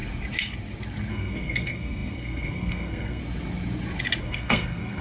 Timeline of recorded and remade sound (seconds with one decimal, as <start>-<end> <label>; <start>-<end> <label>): 0.0-1.1 recorded; 1.1-3.2 remade; 3.2-4.2 recorded; 4.2-5.0 remade